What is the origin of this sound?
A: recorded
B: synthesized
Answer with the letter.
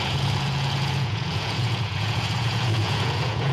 B